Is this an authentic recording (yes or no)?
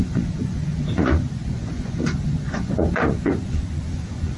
no